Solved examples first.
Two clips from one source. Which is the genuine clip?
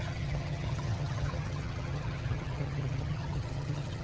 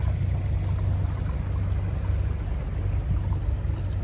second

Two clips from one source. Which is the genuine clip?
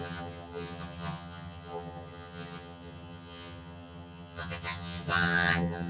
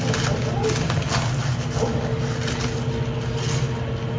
second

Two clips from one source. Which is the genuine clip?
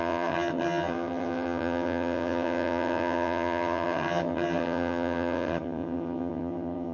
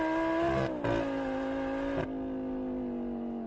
second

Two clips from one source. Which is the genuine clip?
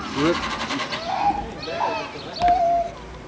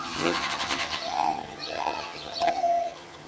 first